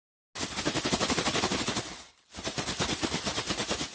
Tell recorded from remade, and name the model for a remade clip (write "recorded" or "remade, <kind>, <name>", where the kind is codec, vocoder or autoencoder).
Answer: recorded